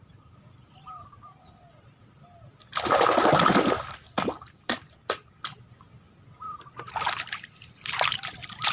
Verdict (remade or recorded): recorded